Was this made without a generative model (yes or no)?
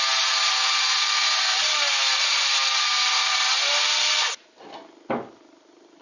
yes